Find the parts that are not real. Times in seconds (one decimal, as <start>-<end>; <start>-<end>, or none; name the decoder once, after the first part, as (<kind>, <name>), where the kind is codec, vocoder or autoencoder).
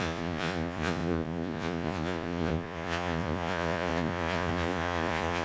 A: 0.0-5.4 (vocoder, Vocos)